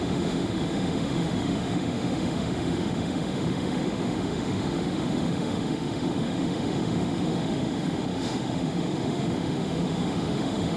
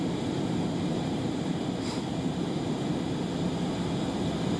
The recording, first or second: second